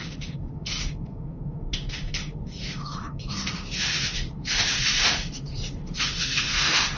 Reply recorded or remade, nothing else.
remade